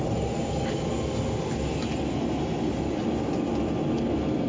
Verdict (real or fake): real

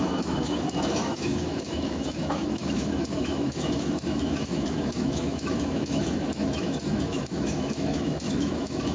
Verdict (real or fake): fake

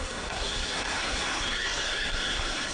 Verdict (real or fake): fake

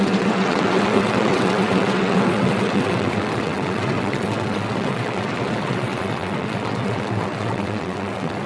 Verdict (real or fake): fake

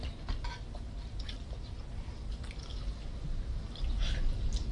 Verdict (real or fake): real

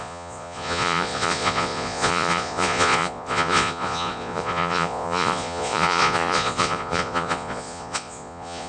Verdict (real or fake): fake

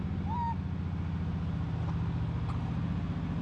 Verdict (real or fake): real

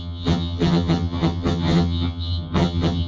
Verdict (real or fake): fake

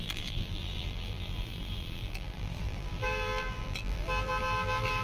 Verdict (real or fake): fake